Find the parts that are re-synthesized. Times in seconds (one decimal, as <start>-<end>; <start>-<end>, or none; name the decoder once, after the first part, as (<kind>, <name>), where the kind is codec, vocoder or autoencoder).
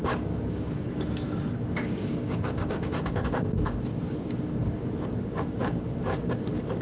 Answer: 0.0-6.8 (codec, DAC)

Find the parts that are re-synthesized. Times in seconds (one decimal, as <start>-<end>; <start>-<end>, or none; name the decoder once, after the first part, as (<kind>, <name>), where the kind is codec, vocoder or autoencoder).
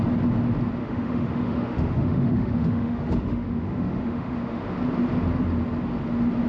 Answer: 0.8-4.7 (autoencoder, DAC-VAE)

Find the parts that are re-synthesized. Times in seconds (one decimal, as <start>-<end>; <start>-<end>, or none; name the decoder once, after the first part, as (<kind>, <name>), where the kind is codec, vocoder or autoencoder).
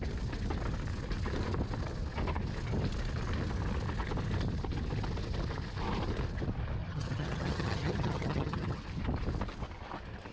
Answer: 6.8-8.8 (vocoder, HiFi-GAN)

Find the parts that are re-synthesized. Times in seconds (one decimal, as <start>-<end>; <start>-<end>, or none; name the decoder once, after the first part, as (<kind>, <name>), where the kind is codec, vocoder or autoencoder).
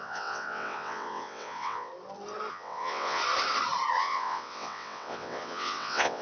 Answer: 0.0-1.9 (vocoder, WaveNeXt); 2.5-3.2; 4.0-6.2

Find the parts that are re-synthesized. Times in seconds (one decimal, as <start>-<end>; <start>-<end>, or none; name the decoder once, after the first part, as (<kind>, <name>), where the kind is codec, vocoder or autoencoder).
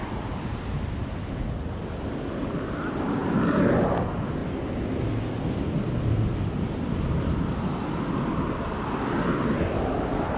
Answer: none